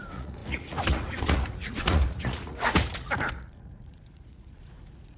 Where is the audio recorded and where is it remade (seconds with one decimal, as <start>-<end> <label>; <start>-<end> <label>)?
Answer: 0.0-5.2 remade

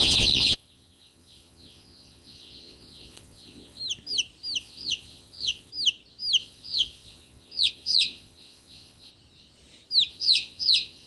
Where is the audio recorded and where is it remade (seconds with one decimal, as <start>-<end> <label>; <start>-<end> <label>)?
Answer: 0.0-3.8 remade; 3.8-4.6 recorded; 4.6-5.7 remade; 5.7-6.4 recorded; 6.4-9.1 remade; 9.1-10.1 recorded; 10.1-11.1 remade

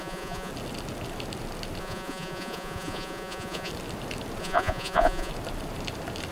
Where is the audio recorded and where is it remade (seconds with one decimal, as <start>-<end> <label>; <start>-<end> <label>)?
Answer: 0.0-0.5 remade; 0.5-1.8 recorded; 1.8-3.7 remade; 3.7-4.4 recorded; 4.4-5.3 remade; 5.3-6.3 recorded

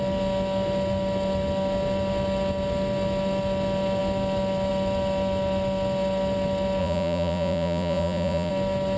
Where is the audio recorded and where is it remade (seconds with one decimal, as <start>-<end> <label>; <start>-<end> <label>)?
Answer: 0.0-6.8 recorded; 6.8-8.5 remade; 8.5-9.0 recorded

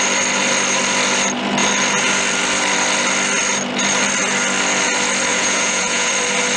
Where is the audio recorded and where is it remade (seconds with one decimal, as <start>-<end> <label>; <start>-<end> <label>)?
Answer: 0.0-5.3 recorded; 5.3-6.1 remade; 6.1-6.6 recorded

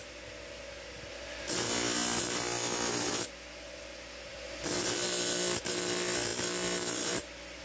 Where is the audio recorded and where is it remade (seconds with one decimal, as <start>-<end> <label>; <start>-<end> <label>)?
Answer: 0.0-7.6 recorded

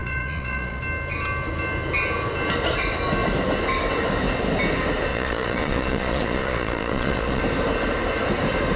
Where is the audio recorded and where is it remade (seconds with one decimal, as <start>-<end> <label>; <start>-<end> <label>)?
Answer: 0.0-0.8 remade; 0.8-5.1 recorded; 5.1-7.4 remade; 7.4-8.8 recorded